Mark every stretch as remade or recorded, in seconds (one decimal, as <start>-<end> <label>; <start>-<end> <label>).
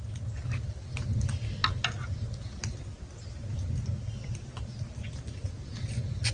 0.0-6.3 recorded